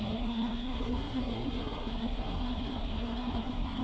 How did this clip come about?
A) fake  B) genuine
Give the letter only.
A